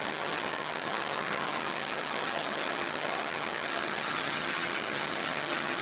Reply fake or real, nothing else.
fake